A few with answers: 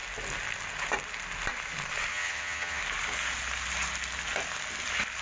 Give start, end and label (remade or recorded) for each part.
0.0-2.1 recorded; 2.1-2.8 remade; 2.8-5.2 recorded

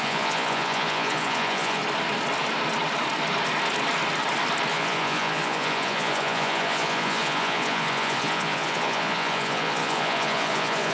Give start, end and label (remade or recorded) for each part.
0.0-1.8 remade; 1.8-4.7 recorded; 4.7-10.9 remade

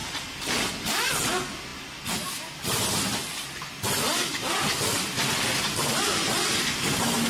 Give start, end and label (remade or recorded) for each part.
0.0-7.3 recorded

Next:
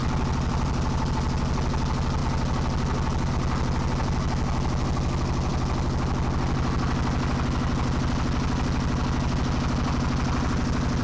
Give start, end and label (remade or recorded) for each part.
0.0-1.1 remade; 1.1-11.0 recorded

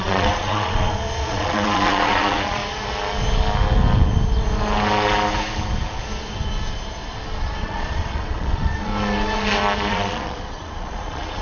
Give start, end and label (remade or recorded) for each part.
0.0-2.6 remade; 2.6-7.4 recorded; 7.4-8.9 remade; 8.9-9.9 recorded; 9.9-11.4 remade

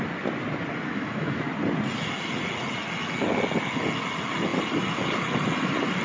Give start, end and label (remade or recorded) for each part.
0.0-0.9 recorded; 0.9-1.5 remade; 1.5-6.0 recorded